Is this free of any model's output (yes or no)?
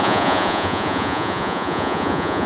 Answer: no